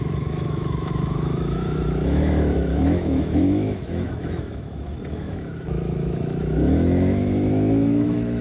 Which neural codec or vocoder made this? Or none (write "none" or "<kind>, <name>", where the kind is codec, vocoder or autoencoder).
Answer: autoencoder, DAC-VAE